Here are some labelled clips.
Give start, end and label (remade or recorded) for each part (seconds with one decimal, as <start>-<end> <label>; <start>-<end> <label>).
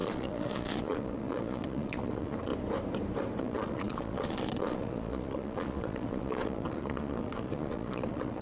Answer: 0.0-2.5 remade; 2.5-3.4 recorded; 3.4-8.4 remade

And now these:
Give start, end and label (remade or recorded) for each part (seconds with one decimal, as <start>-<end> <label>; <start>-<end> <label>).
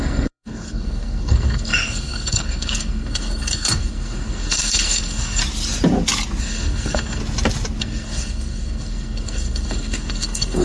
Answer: 0.0-5.4 remade; 5.4-6.4 recorded; 6.4-7.2 remade; 7.2-7.8 recorded; 7.8-10.6 remade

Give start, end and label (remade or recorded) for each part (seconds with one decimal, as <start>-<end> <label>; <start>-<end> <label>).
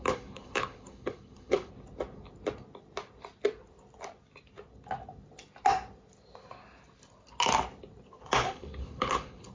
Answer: 0.0-1.7 remade; 1.7-8.4 recorded; 8.4-9.5 remade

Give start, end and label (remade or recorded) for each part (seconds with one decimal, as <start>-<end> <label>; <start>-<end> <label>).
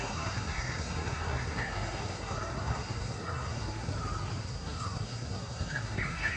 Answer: 0.0-3.9 remade; 3.9-4.4 recorded; 4.4-6.4 remade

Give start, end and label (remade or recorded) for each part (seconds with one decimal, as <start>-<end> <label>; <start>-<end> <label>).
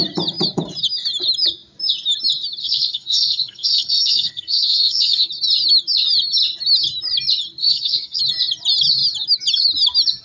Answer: 0.0-2.6 recorded; 2.6-5.3 remade; 5.3-7.6 recorded; 7.6-8.2 remade; 8.2-10.2 recorded